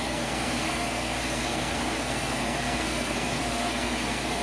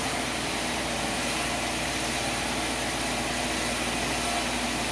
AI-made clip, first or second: first